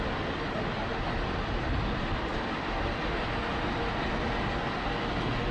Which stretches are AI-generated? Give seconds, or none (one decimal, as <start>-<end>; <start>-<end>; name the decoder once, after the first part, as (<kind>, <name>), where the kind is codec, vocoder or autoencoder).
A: 0.9-4.2 (vocoder, BigVGAN v2)